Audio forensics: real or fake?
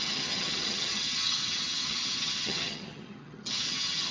fake